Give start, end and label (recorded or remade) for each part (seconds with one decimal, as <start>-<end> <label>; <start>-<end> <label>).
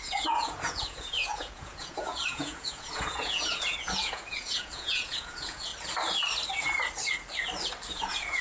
0.0-5.7 remade; 5.7-7.9 recorded; 7.9-8.4 remade